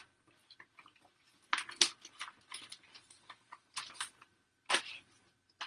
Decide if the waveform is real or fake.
real